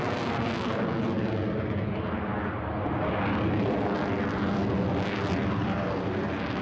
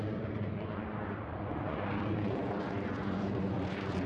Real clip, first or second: first